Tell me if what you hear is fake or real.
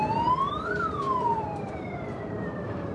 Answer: fake